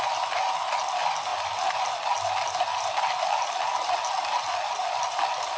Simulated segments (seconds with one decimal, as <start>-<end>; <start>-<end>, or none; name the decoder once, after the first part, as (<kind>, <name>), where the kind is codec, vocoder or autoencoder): none